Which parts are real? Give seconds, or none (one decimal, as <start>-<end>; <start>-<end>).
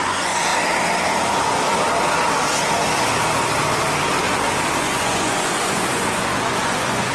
0.5-4.8